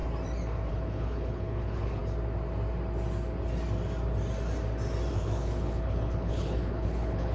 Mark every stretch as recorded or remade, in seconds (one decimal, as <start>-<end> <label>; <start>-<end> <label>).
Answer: 0.0-0.7 recorded; 0.7-2.0 remade; 2.0-5.1 recorded; 5.1-7.3 remade